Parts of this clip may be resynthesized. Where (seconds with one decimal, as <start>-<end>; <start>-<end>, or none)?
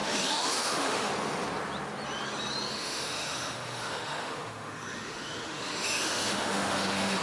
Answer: 0.0-1.1; 2.7-7.2